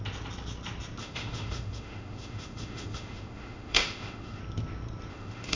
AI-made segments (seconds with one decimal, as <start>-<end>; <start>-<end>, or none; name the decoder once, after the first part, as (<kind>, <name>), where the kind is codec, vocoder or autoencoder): 1.0-4.4 (autoencoder, DAC-VAE); 5.1-5.6